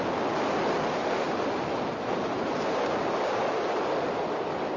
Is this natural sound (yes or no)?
yes